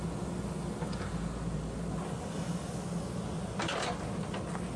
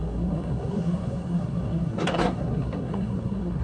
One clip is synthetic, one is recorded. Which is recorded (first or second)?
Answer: first